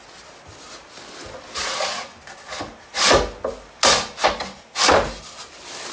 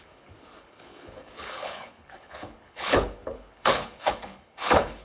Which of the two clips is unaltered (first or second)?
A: first